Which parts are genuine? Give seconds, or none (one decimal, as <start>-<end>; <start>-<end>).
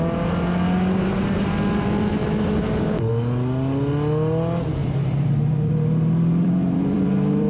0.0-2.2; 3.1-4.8